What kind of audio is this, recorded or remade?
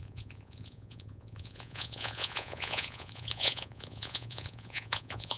remade